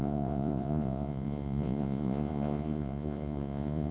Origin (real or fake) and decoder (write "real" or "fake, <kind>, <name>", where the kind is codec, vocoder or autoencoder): fake, vocoder, Vocos